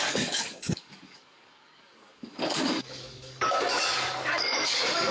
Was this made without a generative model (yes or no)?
no